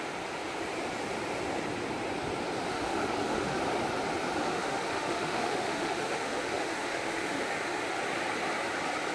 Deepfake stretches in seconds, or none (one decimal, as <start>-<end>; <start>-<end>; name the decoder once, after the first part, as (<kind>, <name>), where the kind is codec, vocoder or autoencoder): 2.7-3.6 (autoencoder, DAC-VAE); 4.4-8.0